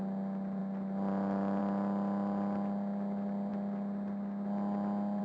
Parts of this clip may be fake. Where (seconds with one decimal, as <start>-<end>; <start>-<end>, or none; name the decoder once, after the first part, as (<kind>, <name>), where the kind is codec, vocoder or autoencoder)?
none